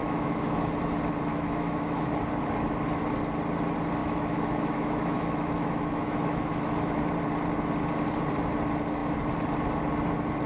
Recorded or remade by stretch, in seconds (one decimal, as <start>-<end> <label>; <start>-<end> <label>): 0.0-0.7 remade; 0.7-1.3 recorded; 1.3-2.1 remade; 2.1-4.0 recorded; 4.0-7.0 remade; 7.0-10.5 recorded